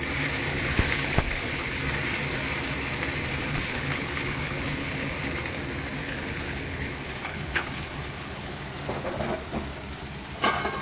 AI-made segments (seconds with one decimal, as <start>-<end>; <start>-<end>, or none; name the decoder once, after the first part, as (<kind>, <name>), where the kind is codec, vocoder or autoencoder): 0.5-1.8 (codec, HILCodec); 3.4-5.1; 6.0-8.6